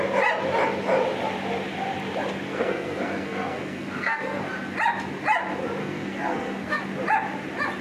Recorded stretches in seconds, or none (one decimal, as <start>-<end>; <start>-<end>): 0.0-2.5; 4.4-5.8; 6.8-7.8